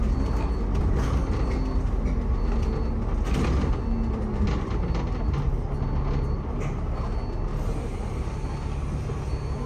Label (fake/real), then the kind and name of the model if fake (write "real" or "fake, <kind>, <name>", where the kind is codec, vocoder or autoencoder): real